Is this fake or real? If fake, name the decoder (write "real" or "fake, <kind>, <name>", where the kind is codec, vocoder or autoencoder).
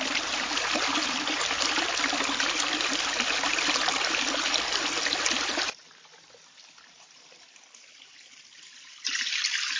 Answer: fake, vocoder, BigVGAN v2